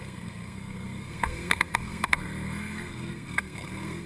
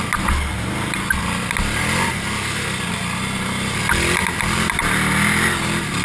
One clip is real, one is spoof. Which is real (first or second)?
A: second